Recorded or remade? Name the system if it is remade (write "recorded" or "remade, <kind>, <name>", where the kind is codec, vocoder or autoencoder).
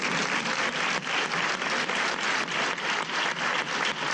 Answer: recorded